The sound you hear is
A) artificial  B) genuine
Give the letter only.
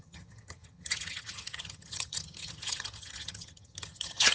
A